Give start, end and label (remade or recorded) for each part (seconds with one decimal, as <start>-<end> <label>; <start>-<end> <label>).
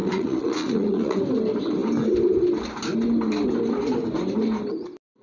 0.0-1.2 remade; 1.2-5.2 recorded